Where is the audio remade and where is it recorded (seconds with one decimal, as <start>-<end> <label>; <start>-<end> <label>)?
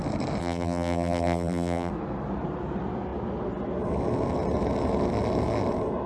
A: 0.0-0.4 recorded; 0.4-1.9 remade; 1.9-6.1 recorded